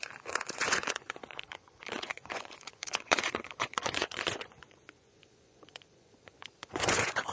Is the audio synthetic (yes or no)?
yes